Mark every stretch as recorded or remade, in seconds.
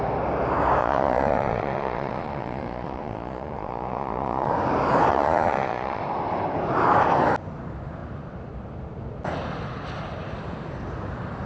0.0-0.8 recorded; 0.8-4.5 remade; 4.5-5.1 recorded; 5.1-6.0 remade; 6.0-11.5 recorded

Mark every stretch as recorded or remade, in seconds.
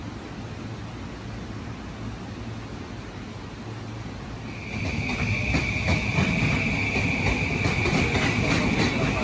0.0-9.2 recorded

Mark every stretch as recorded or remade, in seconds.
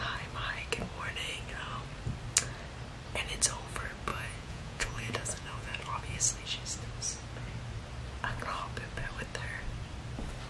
0.0-4.1 recorded; 4.1-6.2 remade; 6.2-10.5 recorded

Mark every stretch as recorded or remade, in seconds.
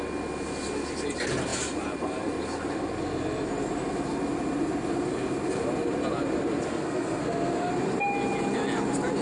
0.0-6.7 recorded; 6.7-7.7 remade; 7.7-9.2 recorded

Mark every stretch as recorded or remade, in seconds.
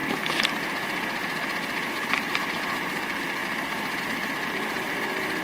0.0-3.4 recorded; 3.4-4.0 remade; 4.0-5.4 recorded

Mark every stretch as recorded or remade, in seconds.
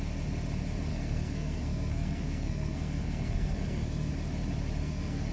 0.0-0.9 recorded; 0.9-4.1 remade; 4.1-4.8 recorded; 4.8-5.3 remade